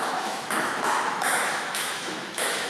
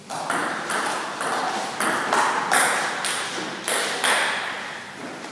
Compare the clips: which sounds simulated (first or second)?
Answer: first